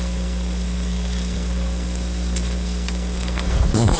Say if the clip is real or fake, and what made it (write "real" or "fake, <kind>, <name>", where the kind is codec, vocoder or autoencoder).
fake, codec, SNAC